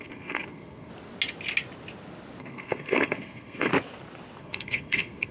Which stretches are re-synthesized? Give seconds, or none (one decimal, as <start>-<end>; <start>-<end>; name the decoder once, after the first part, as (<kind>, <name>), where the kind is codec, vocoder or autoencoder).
0.0-0.9 (codec, SNAC); 2.4-3.7; 4.4-5.3